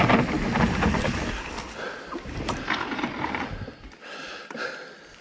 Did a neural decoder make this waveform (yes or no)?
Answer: no